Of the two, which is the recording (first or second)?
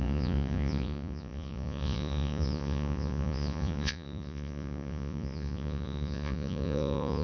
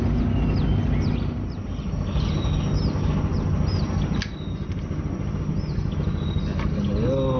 second